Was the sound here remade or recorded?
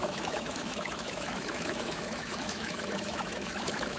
remade